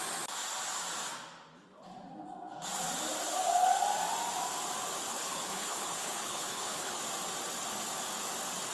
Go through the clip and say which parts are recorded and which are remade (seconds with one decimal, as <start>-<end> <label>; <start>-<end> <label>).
0.0-5.1 recorded; 5.1-7.0 remade; 7.0-8.7 recorded